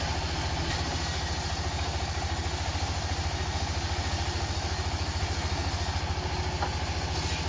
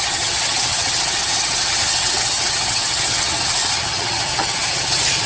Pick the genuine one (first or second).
first